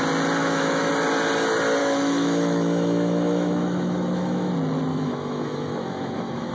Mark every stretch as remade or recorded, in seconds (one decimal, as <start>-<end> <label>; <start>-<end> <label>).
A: 0.0-0.4 recorded; 0.4-0.9 remade; 0.9-1.8 recorded; 1.8-4.5 remade; 4.5-4.9 recorded; 4.9-6.5 remade